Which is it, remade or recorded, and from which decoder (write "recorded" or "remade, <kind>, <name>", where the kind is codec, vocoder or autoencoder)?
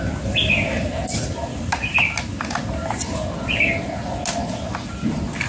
recorded